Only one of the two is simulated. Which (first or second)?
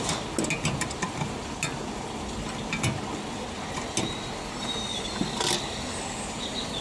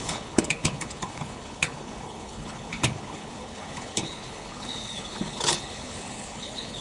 second